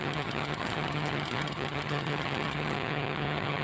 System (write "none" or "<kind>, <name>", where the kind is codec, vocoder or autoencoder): vocoder, HiFi-GAN